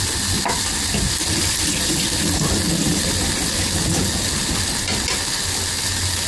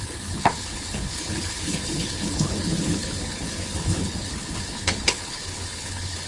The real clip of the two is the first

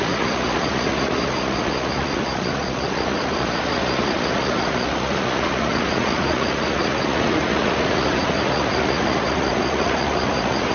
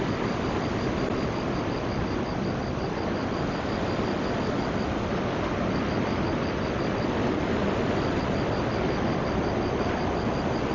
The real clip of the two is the second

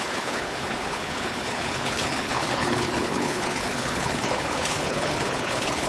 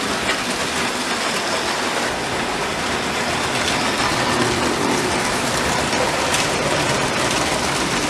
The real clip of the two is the second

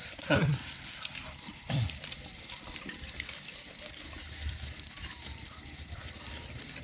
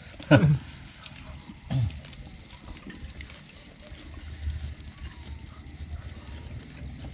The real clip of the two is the second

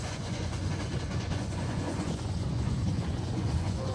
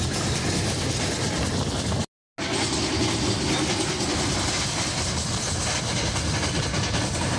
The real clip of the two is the second